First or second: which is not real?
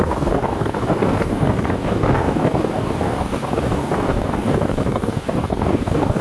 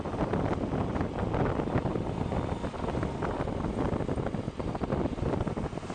first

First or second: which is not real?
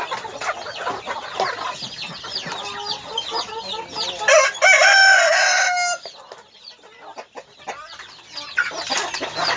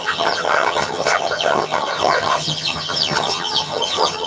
second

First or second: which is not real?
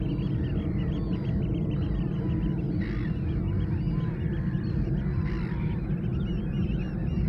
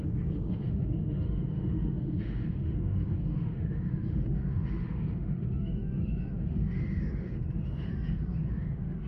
second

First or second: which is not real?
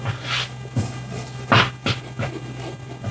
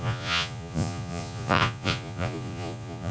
second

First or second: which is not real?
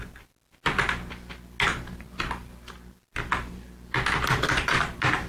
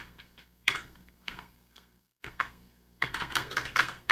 second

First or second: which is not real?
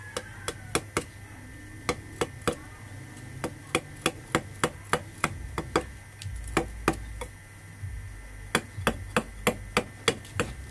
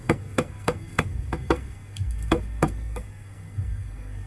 second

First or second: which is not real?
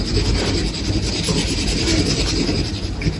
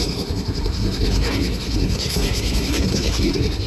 second